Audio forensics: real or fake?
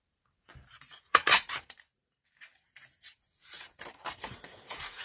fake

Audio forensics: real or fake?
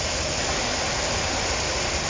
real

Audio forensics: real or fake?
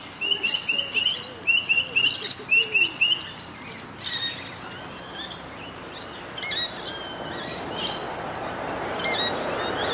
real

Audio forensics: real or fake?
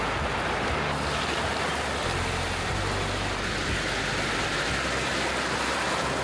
real